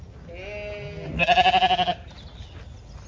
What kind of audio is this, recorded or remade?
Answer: recorded